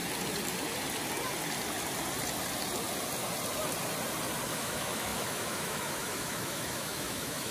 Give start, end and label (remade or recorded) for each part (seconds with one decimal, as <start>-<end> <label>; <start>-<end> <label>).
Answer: 0.0-4.5 recorded; 4.5-7.5 remade